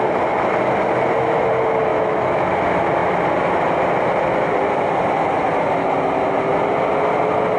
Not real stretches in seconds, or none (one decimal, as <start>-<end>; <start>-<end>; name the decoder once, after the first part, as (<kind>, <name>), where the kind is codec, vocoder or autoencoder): 1.9-2.5 (autoencoder, DAC-VAE)